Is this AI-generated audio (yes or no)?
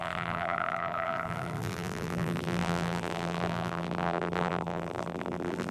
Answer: yes